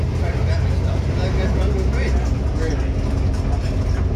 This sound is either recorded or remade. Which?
recorded